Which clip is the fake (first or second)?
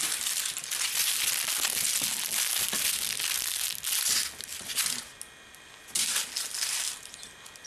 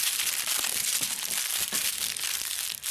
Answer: second